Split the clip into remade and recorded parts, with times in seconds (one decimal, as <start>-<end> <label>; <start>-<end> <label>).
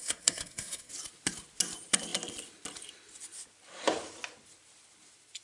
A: 0.0-0.9 remade; 0.9-5.4 recorded